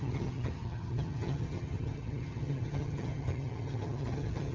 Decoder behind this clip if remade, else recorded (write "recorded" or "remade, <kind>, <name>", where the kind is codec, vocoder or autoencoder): remade, vocoder, HiFi-GAN